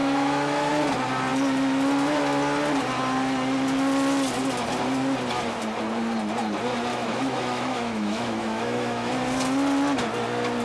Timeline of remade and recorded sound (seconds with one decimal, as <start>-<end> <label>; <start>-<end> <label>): 0.0-0.7 remade; 0.7-6.9 recorded; 6.9-9.1 remade; 9.1-10.6 recorded